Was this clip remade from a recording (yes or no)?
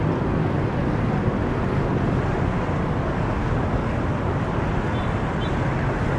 no